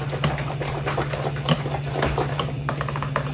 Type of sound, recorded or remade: recorded